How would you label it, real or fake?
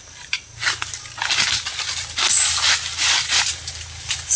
real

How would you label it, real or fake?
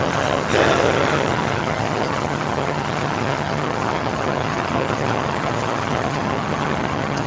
fake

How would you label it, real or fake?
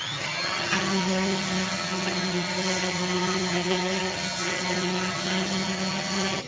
fake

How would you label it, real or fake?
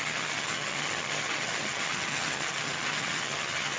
fake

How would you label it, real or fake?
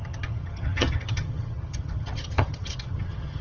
fake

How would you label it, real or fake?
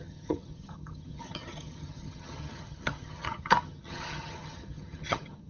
fake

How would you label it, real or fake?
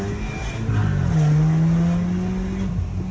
real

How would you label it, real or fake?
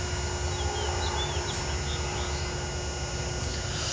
real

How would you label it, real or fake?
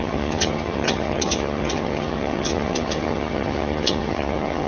fake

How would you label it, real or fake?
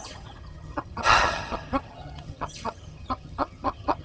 fake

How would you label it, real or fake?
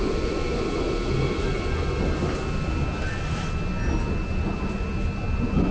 real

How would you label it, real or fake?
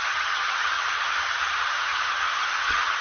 fake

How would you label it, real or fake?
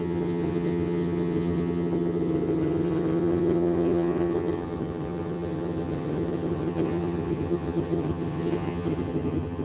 fake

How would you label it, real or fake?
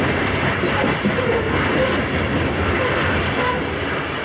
real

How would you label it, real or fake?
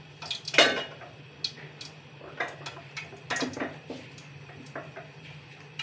real